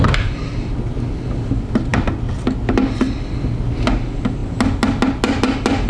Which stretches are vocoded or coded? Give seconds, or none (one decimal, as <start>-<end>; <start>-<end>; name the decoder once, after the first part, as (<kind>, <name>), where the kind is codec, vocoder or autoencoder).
none